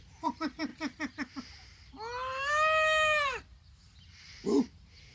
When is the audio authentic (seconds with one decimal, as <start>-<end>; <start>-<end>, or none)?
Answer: 0.7-3.7